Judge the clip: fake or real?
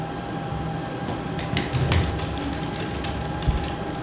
real